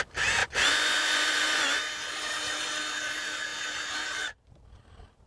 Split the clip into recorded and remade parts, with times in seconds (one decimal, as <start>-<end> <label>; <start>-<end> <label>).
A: 0.0-0.4 recorded; 0.4-1.8 remade; 1.8-5.3 recorded